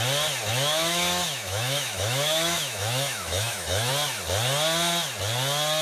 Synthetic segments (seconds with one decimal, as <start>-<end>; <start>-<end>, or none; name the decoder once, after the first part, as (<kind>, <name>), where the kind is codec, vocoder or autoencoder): 0.5-3.9 (autoencoder, DAC-VAE)